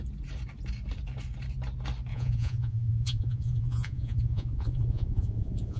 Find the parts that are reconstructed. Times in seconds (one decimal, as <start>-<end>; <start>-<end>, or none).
2.1-5.8